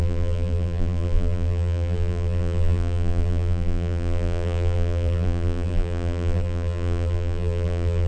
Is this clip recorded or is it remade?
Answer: remade